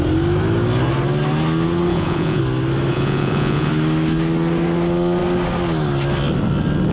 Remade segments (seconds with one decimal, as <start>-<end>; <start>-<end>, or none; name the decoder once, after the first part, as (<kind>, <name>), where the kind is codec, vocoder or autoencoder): 1.9-2.4 (vocoder, Vocos); 2.9-3.7